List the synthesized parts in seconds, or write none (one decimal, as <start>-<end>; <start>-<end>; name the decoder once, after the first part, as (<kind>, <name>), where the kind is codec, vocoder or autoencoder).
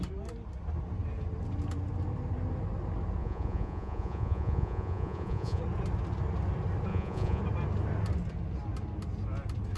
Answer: 3.2-5.6 (vocoder, Vocos); 6.9-7.4